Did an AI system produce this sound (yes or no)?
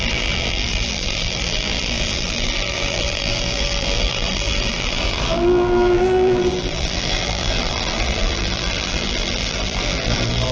yes